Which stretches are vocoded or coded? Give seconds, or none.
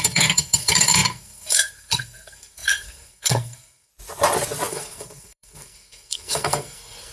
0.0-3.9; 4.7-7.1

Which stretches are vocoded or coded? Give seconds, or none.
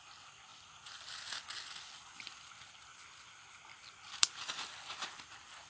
none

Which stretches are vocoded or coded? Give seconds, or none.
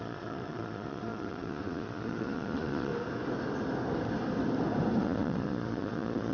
0.0-2.9; 5.0-6.3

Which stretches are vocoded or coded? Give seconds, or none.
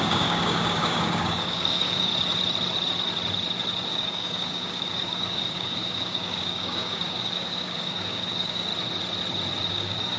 0.0-2.1; 3.9-8.7; 9.7-10.2